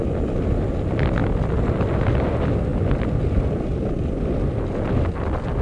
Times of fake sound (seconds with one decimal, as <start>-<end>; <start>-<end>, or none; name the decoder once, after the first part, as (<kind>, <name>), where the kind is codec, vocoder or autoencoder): none